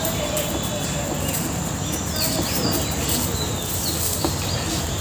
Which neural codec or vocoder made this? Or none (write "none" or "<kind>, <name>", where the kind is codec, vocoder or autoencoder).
none